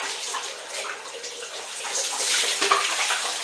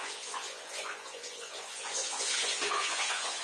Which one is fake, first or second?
second